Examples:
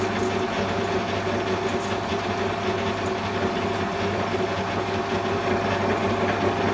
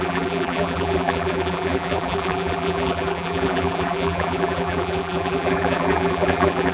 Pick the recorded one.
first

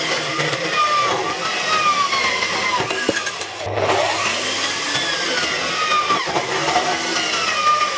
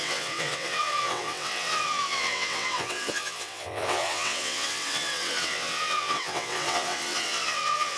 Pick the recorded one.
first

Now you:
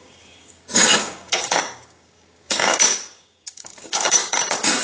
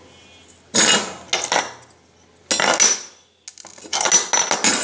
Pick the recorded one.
second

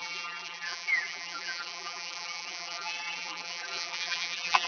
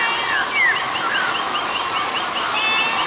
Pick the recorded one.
second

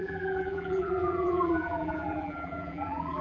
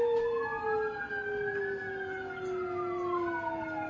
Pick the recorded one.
second